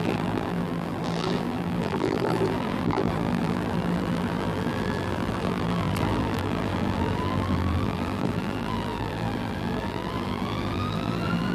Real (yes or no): no